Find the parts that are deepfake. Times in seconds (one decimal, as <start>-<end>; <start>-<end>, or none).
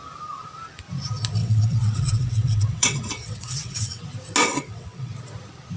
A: 1.4-4.0; 4.4-5.1